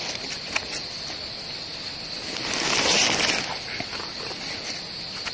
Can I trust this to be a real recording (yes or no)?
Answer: yes